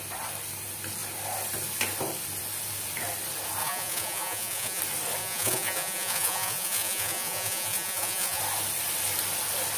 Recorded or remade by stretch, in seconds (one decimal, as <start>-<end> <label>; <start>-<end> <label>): 0.0-3.6 recorded; 3.6-4.8 remade; 4.8-5.2 recorded; 5.2-8.4 remade; 8.4-9.8 recorded